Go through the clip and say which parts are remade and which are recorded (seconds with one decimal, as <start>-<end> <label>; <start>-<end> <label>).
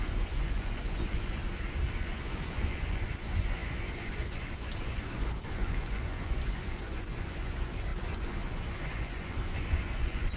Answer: 0.0-1.4 remade; 1.4-2.0 recorded; 2.0-10.4 remade